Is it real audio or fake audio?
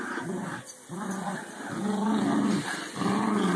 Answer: real